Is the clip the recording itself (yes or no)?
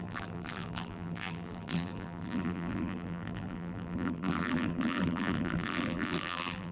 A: no